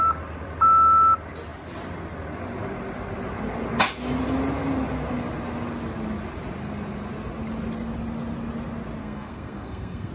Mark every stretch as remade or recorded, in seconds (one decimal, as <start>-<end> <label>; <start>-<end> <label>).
0.0-9.0 recorded; 9.0-10.1 remade